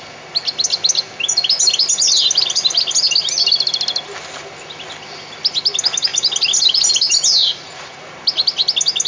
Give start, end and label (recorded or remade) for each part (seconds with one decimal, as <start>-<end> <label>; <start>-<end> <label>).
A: 0.0-7.4 recorded; 7.4-8.0 remade; 8.0-9.1 recorded